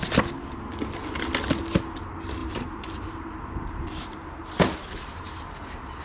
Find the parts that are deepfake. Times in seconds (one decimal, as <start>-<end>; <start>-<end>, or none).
2.4-6.0